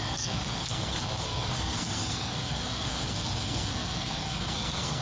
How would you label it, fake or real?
fake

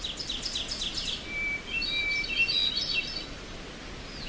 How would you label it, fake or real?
real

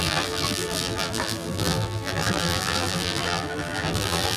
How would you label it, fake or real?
fake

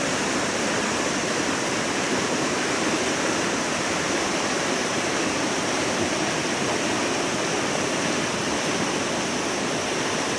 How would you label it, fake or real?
fake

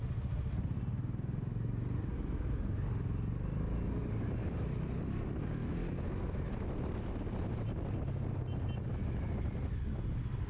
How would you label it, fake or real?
real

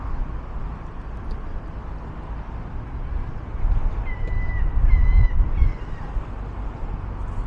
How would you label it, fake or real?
real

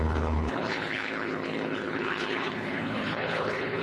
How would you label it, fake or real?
fake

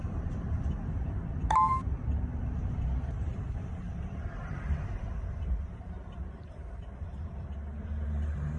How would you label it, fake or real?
fake